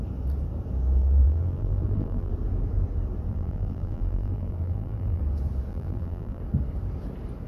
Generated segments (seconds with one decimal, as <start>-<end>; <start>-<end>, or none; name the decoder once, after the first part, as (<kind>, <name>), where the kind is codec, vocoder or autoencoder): 1.0-2.3 (vocoder, BigVGAN v2); 3.3-5.2; 5.7-6.4